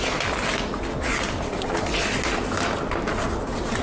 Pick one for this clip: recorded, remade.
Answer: recorded